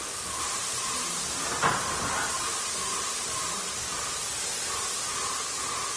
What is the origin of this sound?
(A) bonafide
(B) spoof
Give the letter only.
A